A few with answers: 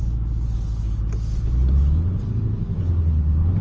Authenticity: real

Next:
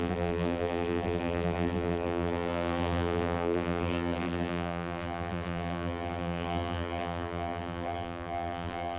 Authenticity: fake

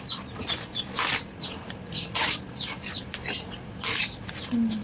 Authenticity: real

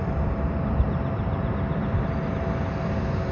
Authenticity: real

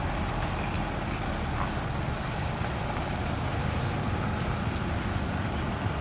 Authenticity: real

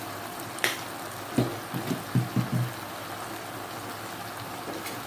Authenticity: real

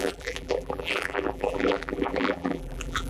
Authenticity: fake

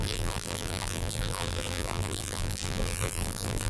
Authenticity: fake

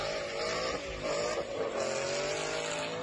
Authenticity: real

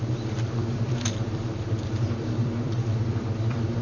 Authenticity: fake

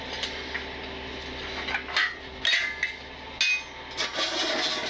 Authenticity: real